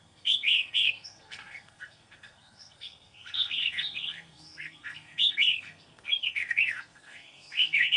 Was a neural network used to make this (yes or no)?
yes